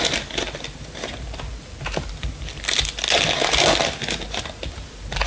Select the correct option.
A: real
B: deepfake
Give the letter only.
A